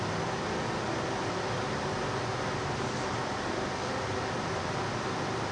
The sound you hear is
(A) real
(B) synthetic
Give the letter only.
A